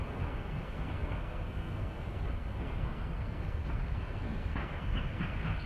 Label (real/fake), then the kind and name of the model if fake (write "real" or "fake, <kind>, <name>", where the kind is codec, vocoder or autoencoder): fake, codec, SNAC